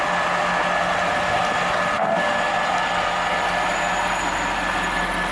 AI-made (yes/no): no